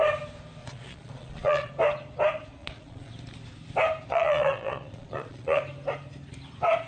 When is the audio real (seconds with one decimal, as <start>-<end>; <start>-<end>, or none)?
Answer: 0.0-0.6; 1.7-2.6; 3.1-4.1; 5.6-6.9